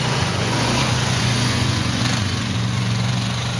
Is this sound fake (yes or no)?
yes